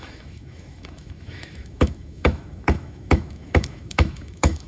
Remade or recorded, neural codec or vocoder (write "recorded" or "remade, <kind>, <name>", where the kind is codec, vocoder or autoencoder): remade, autoencoder, DAC-VAE